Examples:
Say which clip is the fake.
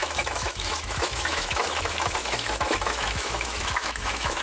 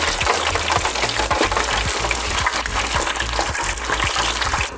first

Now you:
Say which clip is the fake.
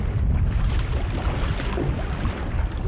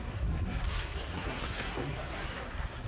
second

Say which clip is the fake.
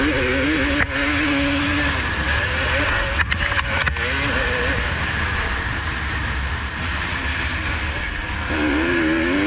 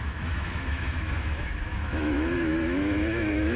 second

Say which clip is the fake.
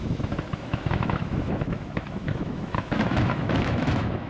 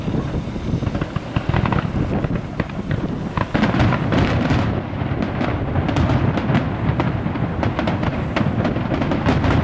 first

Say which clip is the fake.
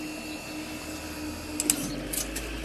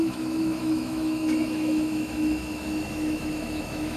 second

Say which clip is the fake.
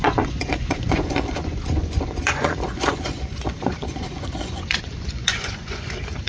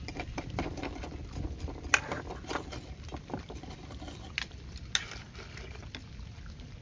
first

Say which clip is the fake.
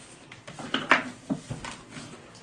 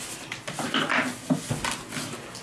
first